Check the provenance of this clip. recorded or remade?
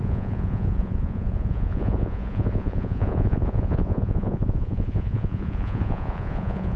remade